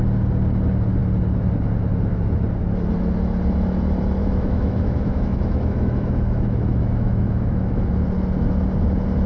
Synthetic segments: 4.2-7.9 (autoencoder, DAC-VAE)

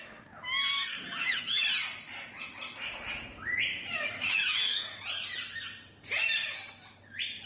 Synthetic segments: 0.9-1.6 (autoencoder, DAC-VAE); 3.7-5.0

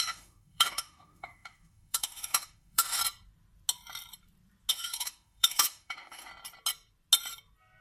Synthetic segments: 0.0-3.0 (autoencoder, DAC-VAE); 4.7-6.3

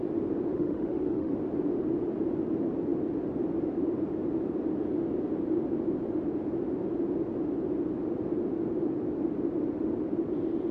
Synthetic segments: 0.5-1.3 (autoencoder, DAC-VAE)

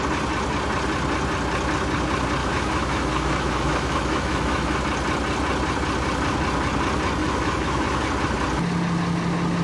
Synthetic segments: 2.4-4.8 (autoencoder, DAC-VAE); 7.2-8.0

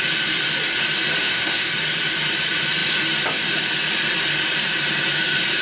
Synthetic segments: 1.2-1.7 (autoencoder, DAC-VAE)

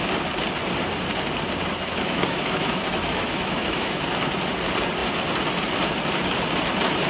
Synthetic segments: 1.7-4.0 (autoencoder, DAC-VAE)

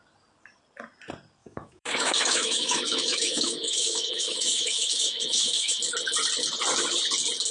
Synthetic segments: 1.4-5.8 (autoencoder, DAC-VAE)